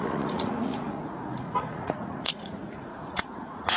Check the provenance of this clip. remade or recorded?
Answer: remade